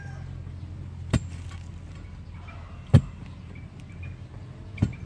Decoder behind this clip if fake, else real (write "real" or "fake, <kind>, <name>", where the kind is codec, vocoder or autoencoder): real